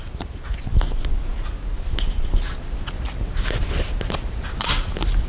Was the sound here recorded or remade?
recorded